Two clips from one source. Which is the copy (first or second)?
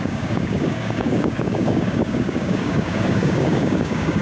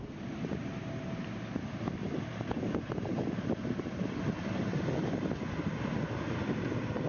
first